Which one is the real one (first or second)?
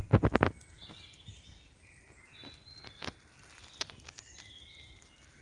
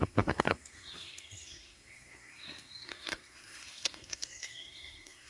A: first